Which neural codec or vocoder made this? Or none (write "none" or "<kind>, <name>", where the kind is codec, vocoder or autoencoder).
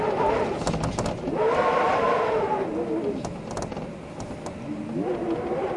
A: none